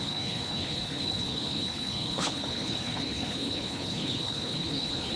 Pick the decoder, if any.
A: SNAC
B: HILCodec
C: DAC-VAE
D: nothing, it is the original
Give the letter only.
B